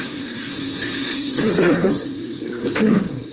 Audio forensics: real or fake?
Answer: fake